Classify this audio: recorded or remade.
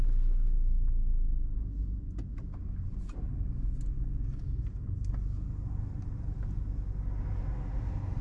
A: recorded